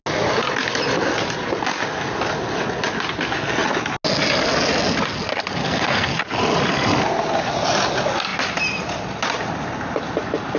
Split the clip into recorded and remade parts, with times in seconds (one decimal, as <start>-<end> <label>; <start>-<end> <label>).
0.0-5.6 recorded; 5.6-6.2 remade; 6.2-10.6 recorded